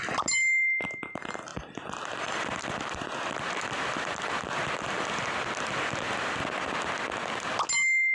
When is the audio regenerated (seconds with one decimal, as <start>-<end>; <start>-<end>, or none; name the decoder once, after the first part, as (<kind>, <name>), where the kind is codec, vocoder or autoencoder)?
1.5-6.4 (vocoder, BigVGAN v2)